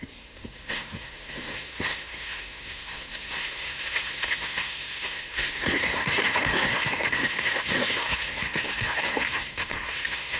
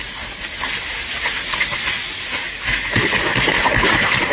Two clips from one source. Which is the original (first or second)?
second